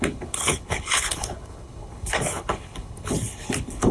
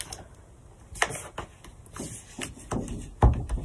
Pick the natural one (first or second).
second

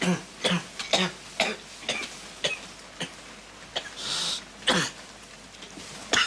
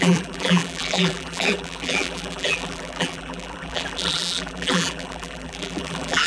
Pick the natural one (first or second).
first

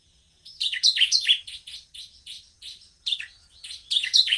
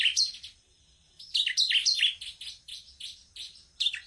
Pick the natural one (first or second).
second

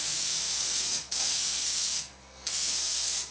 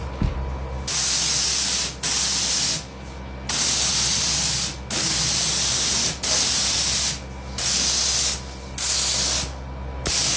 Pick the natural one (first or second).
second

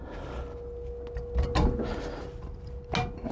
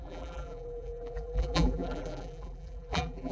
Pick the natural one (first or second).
first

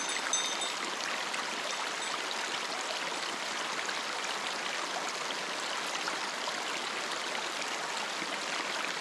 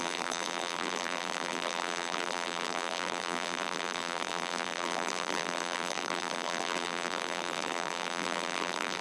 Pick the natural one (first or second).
first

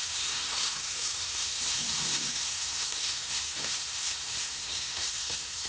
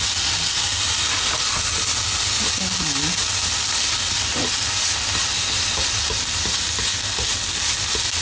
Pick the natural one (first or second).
second